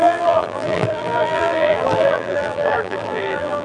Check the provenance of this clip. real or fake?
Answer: fake